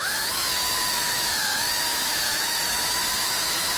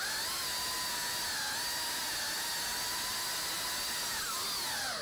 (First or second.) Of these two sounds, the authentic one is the second